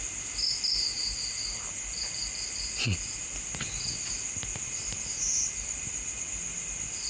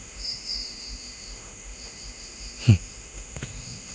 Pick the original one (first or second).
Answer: first